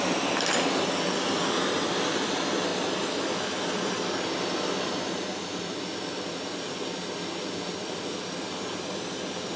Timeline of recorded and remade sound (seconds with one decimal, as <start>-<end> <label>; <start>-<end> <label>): 0.0-9.6 recorded